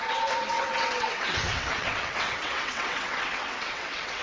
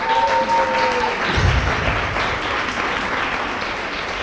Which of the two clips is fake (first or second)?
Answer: first